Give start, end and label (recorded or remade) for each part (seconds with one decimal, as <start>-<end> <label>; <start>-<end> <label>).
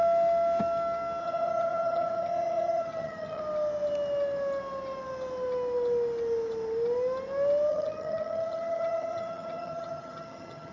0.0-1.2 recorded; 1.2-3.4 remade; 3.4-7.7 recorded; 7.7-10.7 remade